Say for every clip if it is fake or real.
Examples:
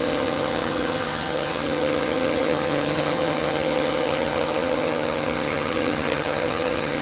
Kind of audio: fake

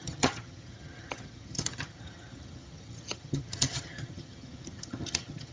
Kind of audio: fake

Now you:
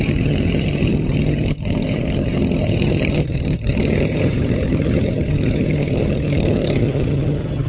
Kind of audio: fake